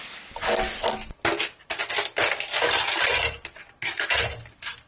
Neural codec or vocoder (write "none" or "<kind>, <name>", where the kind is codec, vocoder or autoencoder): none